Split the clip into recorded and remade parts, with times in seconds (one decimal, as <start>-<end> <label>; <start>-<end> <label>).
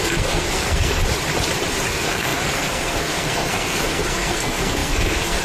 0.0-1.0 remade; 1.0-1.9 recorded; 1.9-5.4 remade